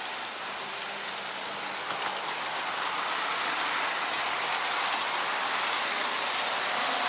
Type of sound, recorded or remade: recorded